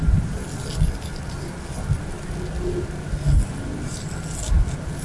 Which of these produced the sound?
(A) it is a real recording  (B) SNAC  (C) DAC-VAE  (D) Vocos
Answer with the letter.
A